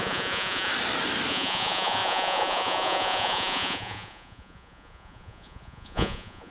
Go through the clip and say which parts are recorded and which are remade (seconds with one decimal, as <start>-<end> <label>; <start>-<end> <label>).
0.0-0.7 remade; 0.7-1.3 recorded; 1.3-6.5 remade